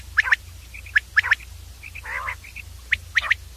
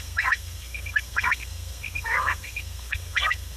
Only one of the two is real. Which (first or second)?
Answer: first